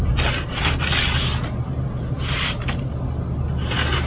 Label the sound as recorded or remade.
recorded